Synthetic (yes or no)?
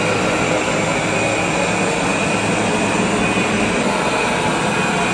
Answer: no